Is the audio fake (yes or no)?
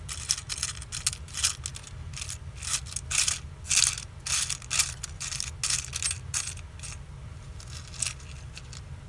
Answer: no